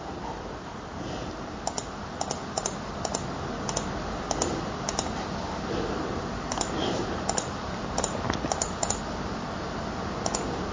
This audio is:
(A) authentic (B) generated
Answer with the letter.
A